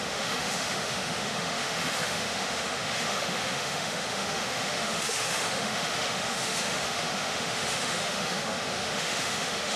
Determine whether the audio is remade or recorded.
remade